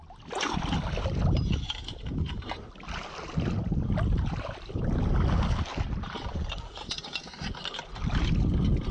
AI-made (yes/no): no